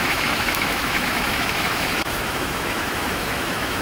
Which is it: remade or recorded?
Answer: remade